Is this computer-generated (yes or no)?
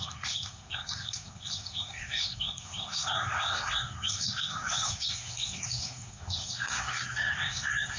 yes